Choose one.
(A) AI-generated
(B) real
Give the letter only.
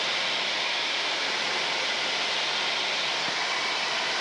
A